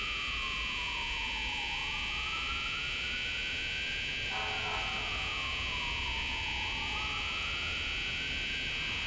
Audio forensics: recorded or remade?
recorded